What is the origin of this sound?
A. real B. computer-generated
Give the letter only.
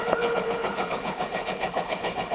B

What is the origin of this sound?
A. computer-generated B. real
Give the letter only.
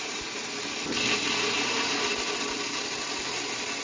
B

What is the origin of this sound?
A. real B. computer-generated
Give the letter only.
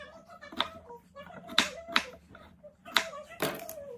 A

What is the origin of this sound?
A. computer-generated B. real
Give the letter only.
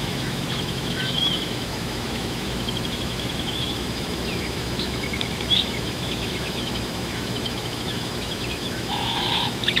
A